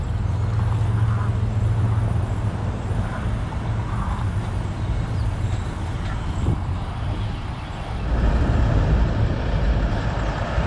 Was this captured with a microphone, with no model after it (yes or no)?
yes